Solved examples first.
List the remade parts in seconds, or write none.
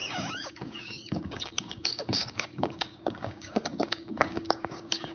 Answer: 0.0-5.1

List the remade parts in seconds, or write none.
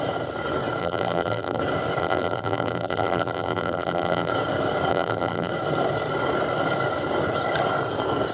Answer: 0.8-1.6; 2.0-4.3; 4.9-5.5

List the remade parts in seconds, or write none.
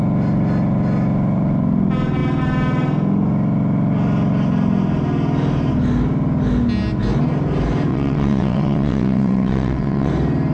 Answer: 7.9-10.1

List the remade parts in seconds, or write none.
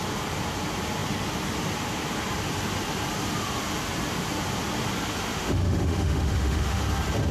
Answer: 5.3-6.8